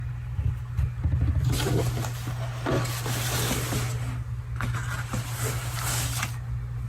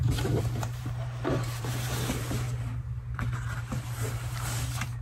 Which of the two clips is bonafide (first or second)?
first